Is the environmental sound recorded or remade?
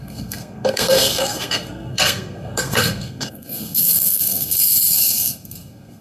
remade